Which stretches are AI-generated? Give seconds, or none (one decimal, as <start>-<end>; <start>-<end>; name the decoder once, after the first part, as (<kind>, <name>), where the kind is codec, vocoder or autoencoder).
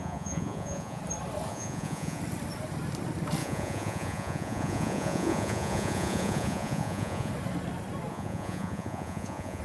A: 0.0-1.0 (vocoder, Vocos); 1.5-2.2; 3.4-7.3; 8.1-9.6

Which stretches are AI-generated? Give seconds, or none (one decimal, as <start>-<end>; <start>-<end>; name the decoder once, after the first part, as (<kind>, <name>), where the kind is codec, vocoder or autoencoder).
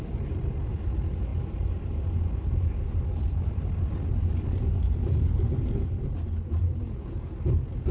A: 6.6-7.3 (vocoder, Vocos)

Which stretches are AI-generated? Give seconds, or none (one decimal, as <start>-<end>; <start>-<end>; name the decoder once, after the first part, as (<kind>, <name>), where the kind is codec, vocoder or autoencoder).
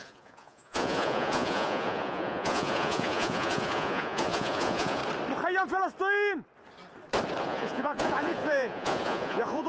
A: 0.0-5.0 (vocoder, Vocos); 7.4-9.7